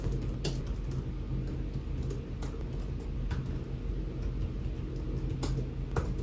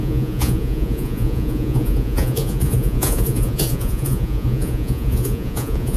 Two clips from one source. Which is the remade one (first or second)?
second